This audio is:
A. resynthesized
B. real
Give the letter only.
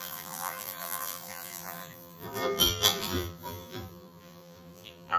A